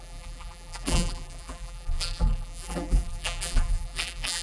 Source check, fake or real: fake